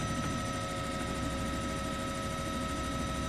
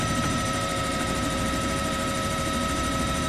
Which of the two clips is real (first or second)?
first